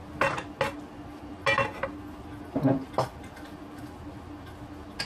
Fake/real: real